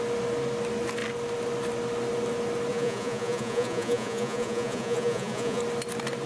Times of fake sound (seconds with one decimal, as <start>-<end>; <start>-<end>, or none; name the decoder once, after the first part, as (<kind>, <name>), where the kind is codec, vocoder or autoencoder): 2.7-5.6 (vocoder, Vocos)